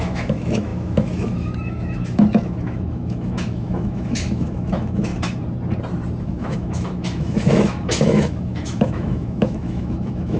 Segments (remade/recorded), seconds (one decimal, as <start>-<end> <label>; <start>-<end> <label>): 0.0-5.1 remade; 5.1-6.2 recorded; 6.2-10.4 remade

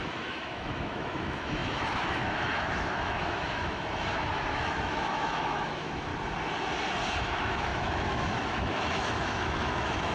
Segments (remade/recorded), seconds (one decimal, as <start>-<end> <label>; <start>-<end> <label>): 0.0-6.1 remade; 6.1-7.2 recorded; 7.2-10.1 remade

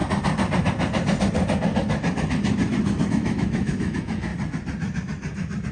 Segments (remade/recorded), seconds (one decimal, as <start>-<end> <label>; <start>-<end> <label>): 0.0-3.1 recorded; 3.1-4.3 remade; 4.3-5.7 recorded

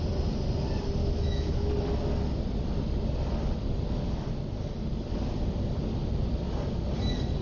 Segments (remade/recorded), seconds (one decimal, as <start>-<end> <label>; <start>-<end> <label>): 0.0-1.0 recorded; 1.0-1.7 remade; 1.7-7.4 recorded